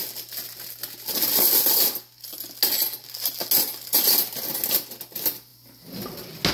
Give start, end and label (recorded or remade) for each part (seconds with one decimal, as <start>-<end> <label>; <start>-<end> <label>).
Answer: 0.0-6.5 recorded